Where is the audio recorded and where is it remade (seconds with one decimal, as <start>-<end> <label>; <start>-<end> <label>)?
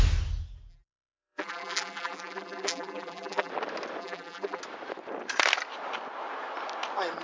0.0-0.7 recorded; 0.7-3.5 remade; 3.5-4.0 recorded; 4.0-4.6 remade; 4.6-7.2 recorded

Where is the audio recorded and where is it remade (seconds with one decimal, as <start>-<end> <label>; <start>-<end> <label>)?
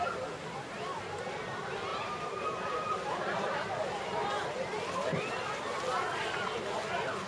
0.0-1.9 recorded; 1.9-3.7 remade; 3.7-7.3 recorded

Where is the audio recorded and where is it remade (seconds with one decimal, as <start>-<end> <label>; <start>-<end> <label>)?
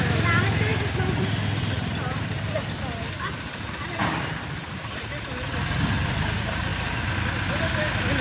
0.0-0.7 recorded; 0.7-2.4 remade; 2.4-4.0 recorded; 4.0-4.9 remade; 4.9-6.7 recorded; 6.7-7.7 remade; 7.7-8.2 recorded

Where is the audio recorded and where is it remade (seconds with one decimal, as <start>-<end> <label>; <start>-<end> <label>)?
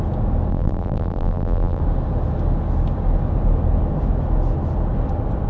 0.0-0.5 recorded; 0.5-1.8 remade; 1.8-5.5 recorded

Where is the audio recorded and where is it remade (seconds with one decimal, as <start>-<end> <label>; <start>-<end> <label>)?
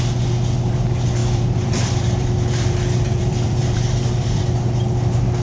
0.0-1.2 recorded; 1.2-4.4 remade; 4.4-5.4 recorded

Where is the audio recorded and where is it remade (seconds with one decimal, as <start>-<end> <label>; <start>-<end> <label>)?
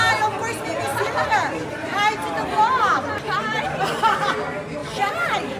0.0-0.9 recorded; 0.9-4.3 remade; 4.3-4.8 recorded; 4.8-5.6 remade